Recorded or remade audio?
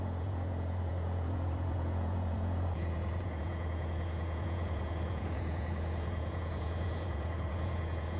remade